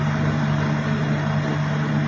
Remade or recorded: recorded